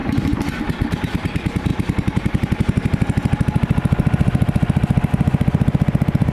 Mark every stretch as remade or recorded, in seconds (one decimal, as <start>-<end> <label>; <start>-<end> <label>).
0.0-1.7 remade; 1.7-5.1 recorded; 5.1-6.3 remade